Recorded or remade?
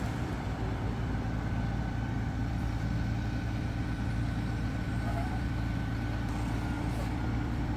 remade